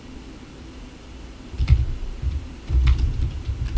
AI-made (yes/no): yes